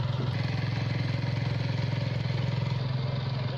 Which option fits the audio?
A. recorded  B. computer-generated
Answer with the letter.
A